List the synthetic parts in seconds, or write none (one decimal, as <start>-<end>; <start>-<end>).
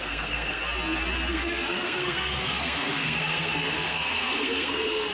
0.0-0.6; 1.3-5.1